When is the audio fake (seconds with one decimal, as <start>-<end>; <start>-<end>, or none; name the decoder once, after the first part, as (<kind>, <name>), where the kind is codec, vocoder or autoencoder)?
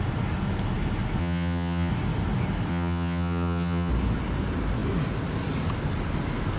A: 1.2-1.9 (vocoder, HiFi-GAN); 2.7-3.9